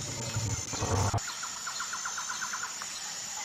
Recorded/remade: recorded